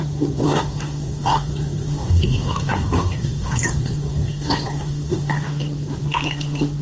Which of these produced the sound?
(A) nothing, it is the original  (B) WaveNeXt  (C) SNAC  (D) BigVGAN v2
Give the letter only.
C